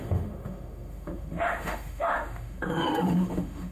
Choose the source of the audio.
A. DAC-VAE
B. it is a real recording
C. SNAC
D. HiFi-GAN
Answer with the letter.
A